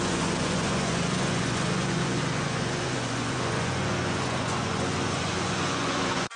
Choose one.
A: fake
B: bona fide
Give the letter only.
A